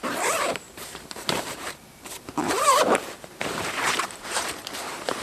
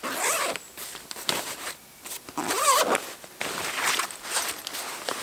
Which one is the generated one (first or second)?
first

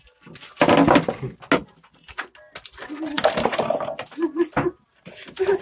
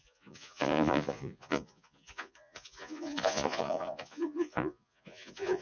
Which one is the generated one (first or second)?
second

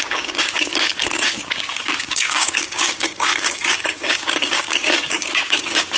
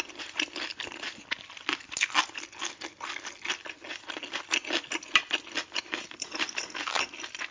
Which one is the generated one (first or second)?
first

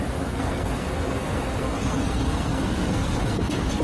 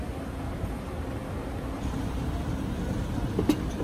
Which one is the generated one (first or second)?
first